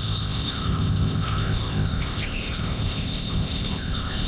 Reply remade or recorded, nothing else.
remade